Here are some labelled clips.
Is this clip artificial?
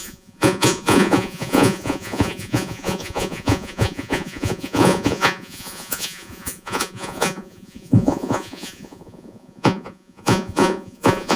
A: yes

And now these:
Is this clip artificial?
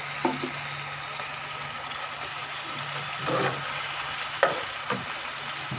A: no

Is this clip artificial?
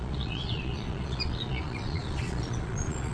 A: yes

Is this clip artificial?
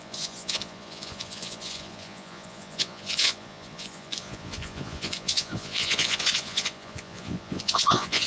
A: yes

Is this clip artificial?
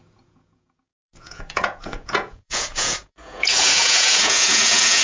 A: yes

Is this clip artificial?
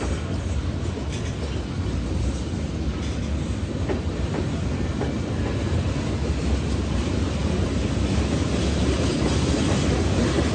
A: no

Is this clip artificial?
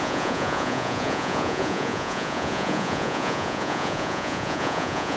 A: yes